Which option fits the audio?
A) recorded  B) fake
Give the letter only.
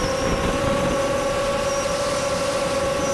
A